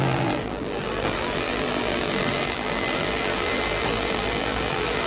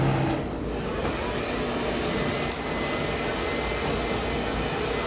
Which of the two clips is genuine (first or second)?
second